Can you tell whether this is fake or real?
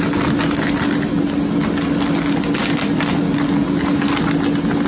real